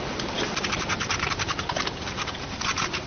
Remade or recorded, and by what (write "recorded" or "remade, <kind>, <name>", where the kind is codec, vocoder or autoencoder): remade, vocoder, BigVGAN v2